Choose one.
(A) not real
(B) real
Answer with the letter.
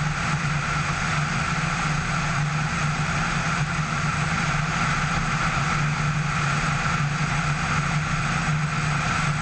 B